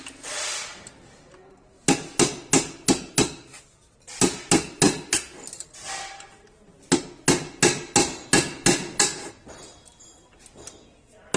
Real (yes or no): yes